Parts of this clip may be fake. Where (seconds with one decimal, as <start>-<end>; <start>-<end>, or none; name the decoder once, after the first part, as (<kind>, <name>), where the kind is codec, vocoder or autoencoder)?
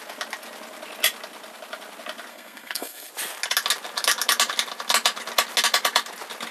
2.3-3.1 (codec, SNAC)